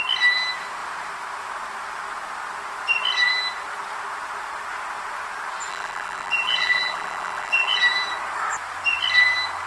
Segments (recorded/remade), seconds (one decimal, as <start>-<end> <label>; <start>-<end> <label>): 0.0-5.7 recorded; 5.7-7.8 remade; 7.8-9.7 recorded